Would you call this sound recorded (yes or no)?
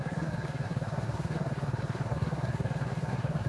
no